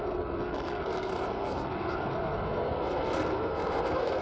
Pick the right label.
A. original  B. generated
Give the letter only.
B